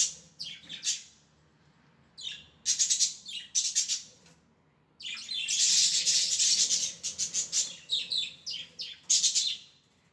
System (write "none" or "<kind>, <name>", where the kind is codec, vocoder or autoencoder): none